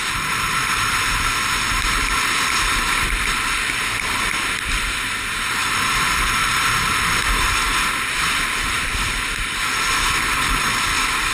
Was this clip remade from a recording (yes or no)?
yes